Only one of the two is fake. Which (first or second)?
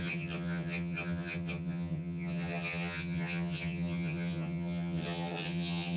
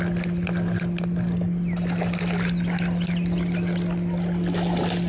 first